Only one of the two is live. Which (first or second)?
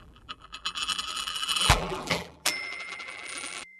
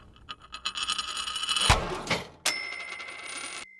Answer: second